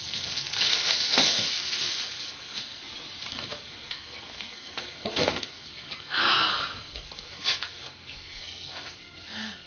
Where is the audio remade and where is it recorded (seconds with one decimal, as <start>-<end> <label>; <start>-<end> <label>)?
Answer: 0.0-2.8 remade; 2.8-3.3 recorded; 3.3-9.7 remade